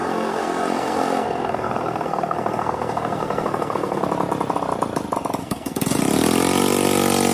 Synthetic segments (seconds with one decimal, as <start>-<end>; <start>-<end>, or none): 0.0-4.0; 5.4-6.0